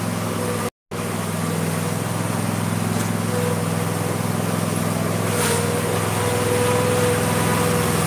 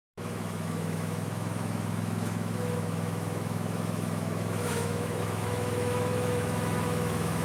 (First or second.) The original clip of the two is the first